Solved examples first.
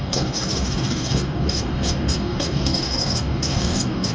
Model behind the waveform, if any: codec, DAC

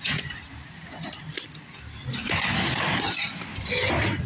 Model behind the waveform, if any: none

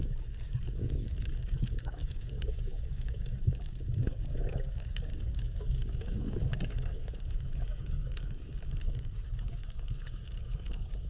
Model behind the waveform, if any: codec, DAC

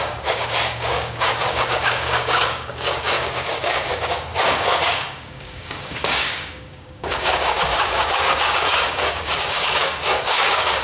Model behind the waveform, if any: codec, DAC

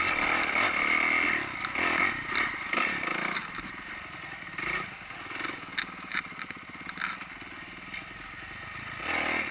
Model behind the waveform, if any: none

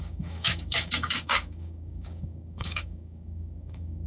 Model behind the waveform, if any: codec, DAC